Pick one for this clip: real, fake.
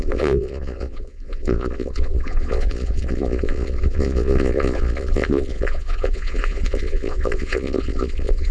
fake